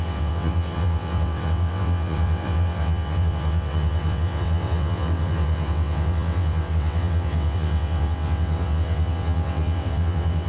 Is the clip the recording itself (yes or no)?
no